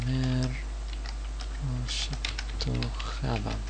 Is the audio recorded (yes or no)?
yes